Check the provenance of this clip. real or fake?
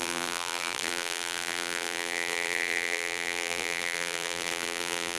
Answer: fake